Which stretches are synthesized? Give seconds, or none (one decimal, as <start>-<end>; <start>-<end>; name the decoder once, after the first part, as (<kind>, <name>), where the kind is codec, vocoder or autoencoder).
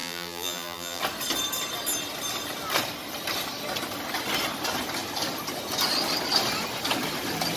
0.0-1.0 (vocoder, BigVGAN v2)